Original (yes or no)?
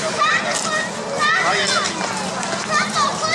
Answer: yes